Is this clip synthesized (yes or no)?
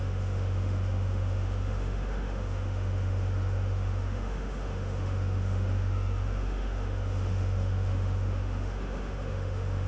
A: yes